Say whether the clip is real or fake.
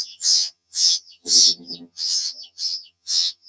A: fake